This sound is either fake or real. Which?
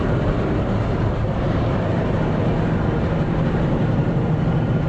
fake